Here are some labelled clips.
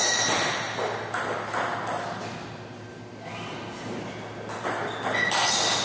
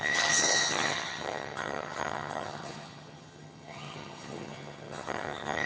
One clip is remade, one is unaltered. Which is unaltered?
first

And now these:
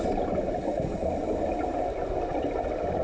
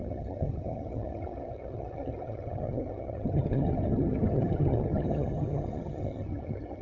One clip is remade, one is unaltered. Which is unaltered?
first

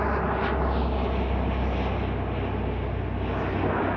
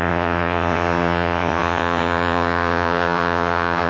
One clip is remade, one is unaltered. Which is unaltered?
first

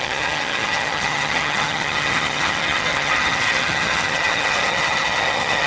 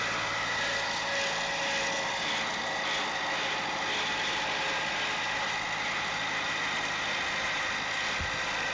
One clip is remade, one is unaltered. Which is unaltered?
second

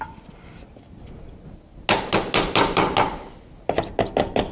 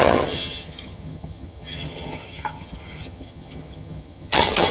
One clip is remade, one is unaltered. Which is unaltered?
first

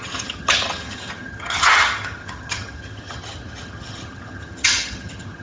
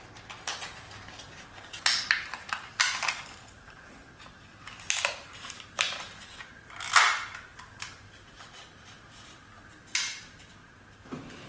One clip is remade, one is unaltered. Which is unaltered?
second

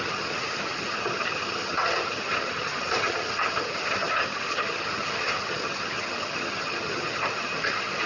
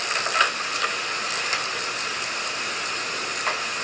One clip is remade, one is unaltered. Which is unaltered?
second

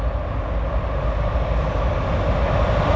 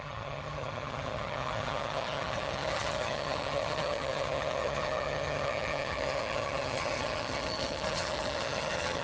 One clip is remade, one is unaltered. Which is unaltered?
first